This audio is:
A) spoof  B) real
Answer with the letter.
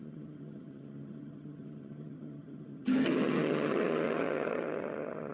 A